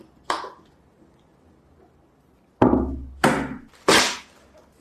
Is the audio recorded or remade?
recorded